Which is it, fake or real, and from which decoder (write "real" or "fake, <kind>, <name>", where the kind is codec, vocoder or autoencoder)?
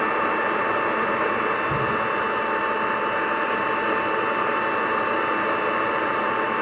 real